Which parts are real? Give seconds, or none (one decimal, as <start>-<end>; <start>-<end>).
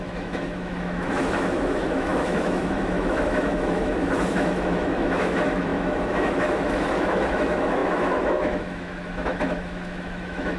none